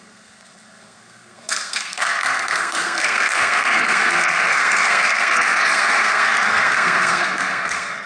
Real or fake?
fake